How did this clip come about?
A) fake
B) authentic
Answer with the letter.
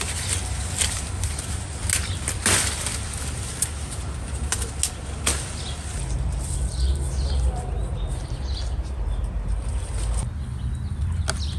B